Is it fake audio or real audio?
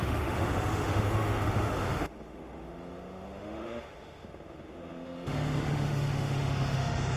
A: fake